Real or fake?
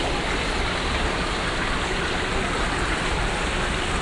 real